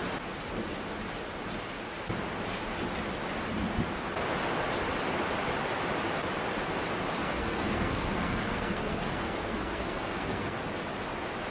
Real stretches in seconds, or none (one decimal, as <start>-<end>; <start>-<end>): 0.0-7.2; 10.6-11.5